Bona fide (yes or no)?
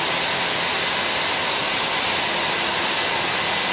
yes